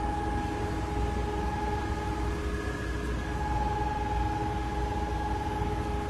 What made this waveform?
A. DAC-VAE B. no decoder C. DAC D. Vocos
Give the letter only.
B